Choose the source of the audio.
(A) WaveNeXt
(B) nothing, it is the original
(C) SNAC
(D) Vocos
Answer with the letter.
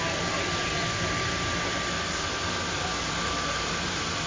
B